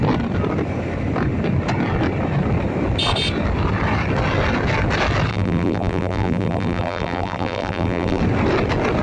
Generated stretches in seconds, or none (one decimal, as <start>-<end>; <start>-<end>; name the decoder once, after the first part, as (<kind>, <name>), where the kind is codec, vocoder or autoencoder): 5.3-8.2 (vocoder, BigVGAN v2)